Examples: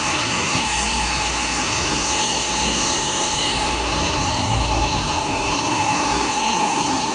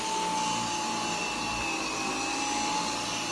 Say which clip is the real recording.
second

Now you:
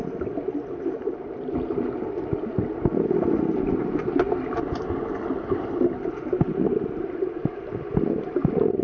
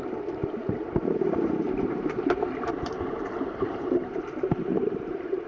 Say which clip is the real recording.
first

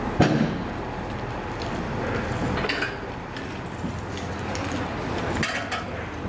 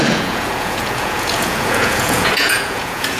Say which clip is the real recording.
first